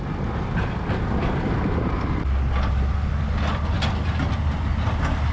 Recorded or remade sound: recorded